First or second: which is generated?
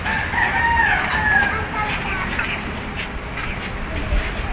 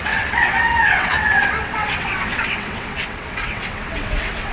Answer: second